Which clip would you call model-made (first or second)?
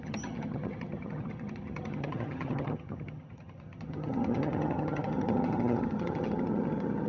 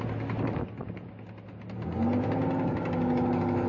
first